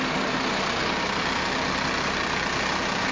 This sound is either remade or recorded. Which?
recorded